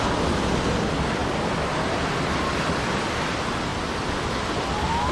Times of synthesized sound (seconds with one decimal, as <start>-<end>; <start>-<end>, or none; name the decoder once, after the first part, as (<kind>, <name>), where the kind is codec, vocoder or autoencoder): none